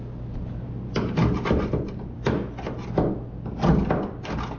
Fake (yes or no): no